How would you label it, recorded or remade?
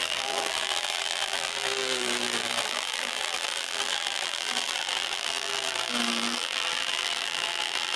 remade